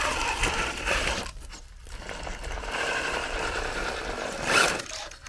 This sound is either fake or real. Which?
fake